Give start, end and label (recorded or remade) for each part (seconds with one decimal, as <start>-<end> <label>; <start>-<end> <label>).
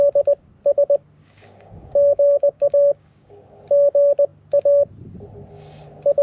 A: 0.0-1.2 recorded; 1.2-3.6 remade; 3.6-6.2 recorded